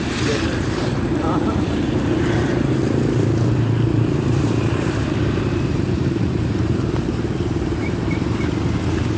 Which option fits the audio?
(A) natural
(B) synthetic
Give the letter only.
B